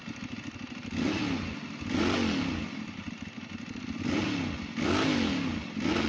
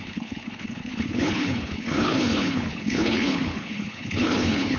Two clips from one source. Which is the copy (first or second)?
second